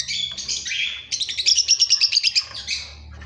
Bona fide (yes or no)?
yes